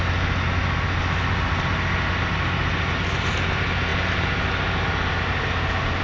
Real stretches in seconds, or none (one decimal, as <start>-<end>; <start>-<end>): 0.0-6.0